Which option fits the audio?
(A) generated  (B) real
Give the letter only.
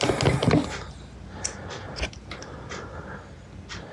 B